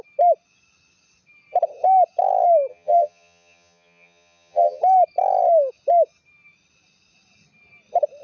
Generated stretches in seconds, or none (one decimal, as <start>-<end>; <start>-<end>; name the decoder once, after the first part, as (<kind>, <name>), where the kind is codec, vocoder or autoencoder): 2.7-4.8 (vocoder, HiFi-GAN)